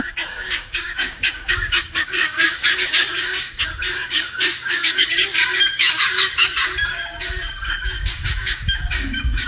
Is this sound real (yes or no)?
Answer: no